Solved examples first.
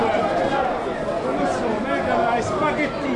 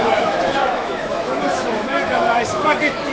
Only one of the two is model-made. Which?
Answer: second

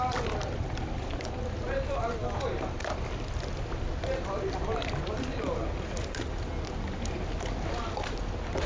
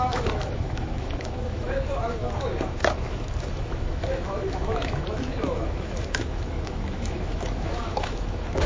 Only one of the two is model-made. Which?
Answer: second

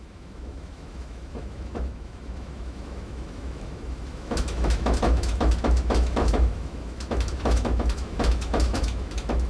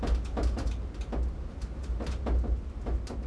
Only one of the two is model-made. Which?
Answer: first